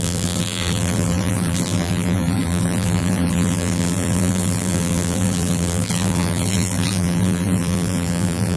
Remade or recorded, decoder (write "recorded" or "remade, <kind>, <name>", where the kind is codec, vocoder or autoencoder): remade, vocoder, BigVGAN v2